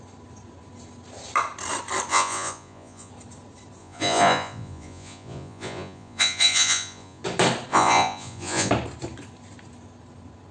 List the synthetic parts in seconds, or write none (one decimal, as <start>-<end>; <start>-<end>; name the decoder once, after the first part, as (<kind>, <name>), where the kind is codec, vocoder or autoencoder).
2.1-3.1 (vocoder, Vocos); 3.8-7.2; 7.7-8.7